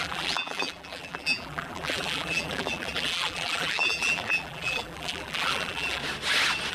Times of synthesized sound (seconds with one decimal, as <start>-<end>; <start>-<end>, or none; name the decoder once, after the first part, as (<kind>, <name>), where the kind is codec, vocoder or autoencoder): 0.0-6.0 (vocoder, BigVGAN v2)